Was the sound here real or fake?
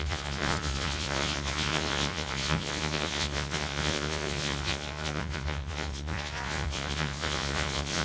fake